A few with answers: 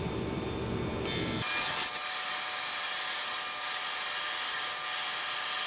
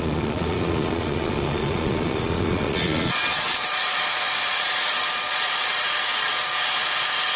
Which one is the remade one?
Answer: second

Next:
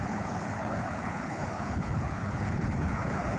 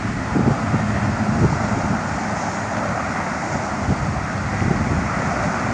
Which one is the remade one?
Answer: first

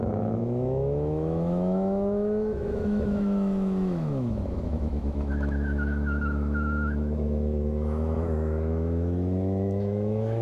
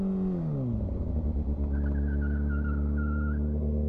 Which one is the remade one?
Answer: first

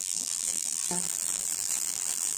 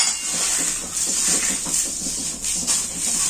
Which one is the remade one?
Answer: first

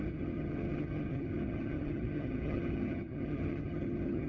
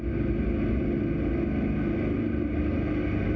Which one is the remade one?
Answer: first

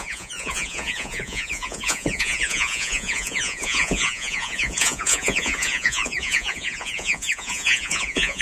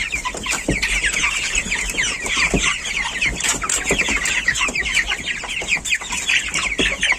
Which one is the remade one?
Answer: first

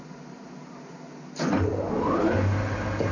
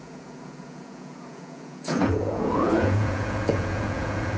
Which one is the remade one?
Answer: second